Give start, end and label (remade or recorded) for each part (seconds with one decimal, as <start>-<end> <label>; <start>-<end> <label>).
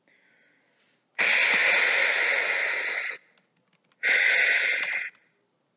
0.0-5.8 recorded